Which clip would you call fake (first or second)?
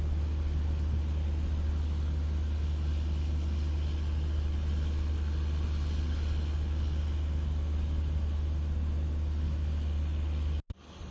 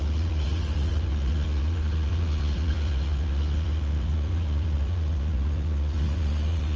second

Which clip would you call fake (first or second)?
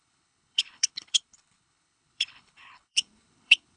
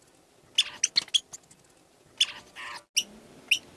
first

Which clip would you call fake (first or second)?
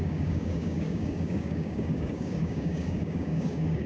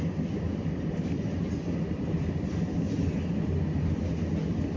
first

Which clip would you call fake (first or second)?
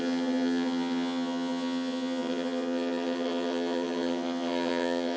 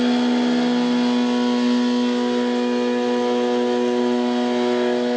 first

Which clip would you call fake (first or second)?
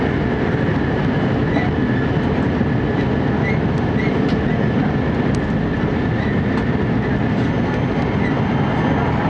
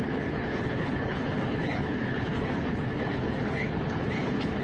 second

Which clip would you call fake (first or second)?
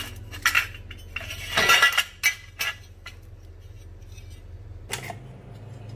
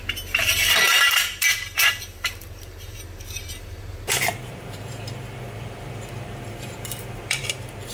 second